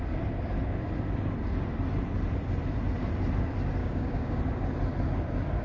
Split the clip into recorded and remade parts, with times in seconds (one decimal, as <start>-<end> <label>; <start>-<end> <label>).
0.0-3.8 recorded; 3.8-4.4 remade; 4.4-5.6 recorded